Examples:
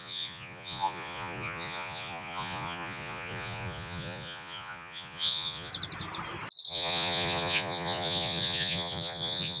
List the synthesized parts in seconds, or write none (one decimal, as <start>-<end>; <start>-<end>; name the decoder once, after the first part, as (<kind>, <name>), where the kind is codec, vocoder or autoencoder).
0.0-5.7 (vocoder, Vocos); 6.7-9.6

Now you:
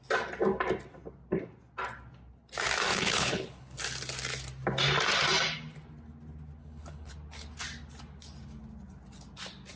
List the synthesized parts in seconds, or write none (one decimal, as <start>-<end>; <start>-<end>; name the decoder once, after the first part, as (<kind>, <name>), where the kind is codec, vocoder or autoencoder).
2.9-3.8 (codec, HILCodec); 6.6-7.1

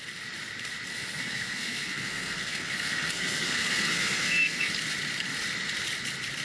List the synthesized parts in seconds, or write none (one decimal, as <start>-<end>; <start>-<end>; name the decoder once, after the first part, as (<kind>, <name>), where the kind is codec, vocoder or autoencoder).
0.9-4.7 (codec, SNAC)